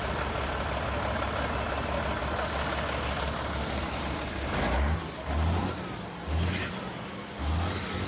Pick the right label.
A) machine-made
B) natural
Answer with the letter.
B